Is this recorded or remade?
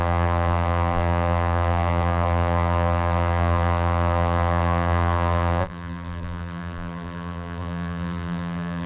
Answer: remade